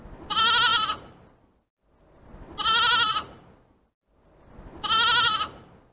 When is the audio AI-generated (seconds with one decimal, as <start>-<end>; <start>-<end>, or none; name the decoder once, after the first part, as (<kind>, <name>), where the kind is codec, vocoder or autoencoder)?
none